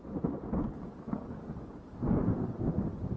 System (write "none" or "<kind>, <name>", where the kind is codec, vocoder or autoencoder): none